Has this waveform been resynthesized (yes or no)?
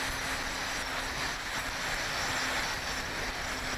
no